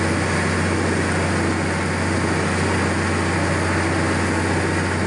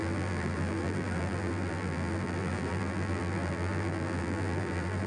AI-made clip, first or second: second